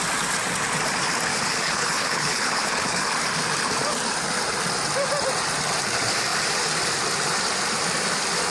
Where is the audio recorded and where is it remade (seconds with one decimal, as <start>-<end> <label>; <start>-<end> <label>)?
0.0-1.3 recorded; 1.3-3.1 remade; 3.1-8.5 recorded